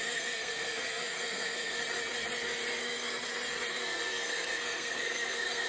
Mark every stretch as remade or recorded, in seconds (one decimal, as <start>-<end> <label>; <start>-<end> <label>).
0.0-1.8 remade; 1.8-2.8 recorded; 2.8-3.2 remade; 3.2-3.7 recorded; 3.7-5.7 remade